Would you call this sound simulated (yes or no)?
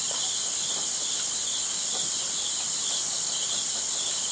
no